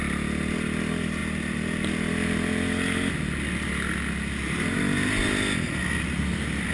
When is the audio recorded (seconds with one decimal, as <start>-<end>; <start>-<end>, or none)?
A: 0.0-6.7